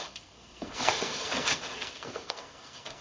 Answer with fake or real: fake